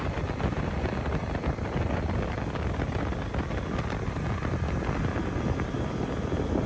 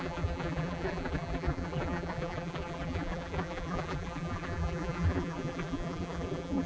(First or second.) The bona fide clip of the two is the first